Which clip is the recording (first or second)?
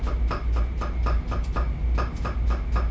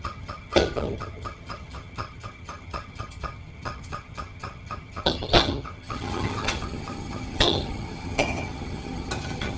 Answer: first